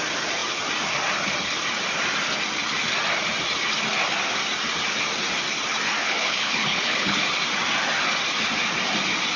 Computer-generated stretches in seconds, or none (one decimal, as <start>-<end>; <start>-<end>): 6.0-7.2

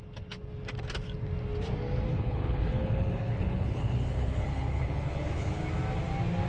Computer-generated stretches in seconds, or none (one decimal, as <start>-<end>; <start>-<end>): 2.1-5.6

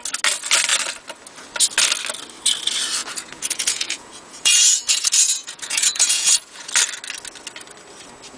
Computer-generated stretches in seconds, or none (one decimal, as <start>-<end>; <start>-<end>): 3.0-6.7